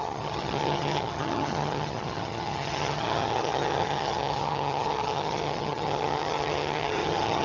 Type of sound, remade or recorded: remade